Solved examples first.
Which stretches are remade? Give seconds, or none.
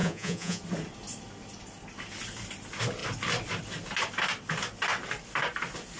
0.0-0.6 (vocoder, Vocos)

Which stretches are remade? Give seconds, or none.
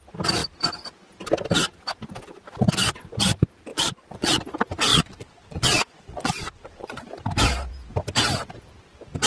3.7-4.4 (vocoder, Vocos); 4.9-7.1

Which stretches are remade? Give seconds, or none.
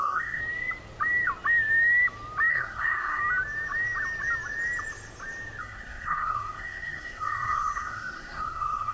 0.0-0.4 (codec, SNAC); 2.5-3.2; 5.6-8.9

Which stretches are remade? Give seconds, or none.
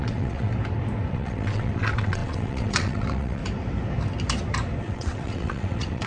0.0-0.5 (vocoder, WaveNeXt); 1.1-3.4; 4.8-6.1